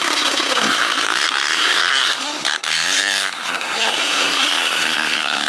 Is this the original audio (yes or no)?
no